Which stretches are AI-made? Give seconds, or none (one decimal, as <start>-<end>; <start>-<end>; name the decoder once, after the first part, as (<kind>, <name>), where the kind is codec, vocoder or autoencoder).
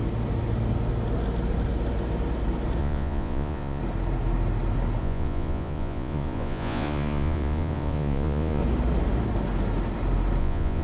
2.8-3.8 (vocoder, Vocos); 5.0-8.6; 10.4-10.8